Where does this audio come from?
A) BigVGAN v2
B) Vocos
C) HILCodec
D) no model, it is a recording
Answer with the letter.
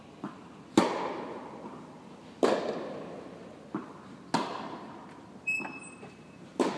D